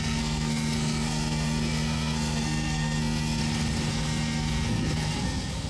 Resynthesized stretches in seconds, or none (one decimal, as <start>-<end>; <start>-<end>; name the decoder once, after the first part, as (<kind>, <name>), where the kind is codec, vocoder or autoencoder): 0.0-3.4 (codec, SNAC); 3.9-5.7